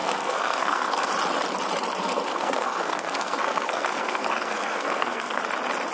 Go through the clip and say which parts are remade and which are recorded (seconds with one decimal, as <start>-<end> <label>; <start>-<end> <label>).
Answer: 0.0-1.1 remade; 1.1-2.0 recorded; 2.0-5.4 remade; 5.4-5.9 recorded